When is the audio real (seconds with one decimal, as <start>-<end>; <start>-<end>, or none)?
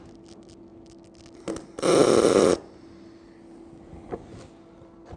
0.0-5.2